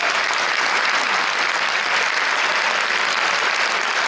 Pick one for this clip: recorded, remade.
recorded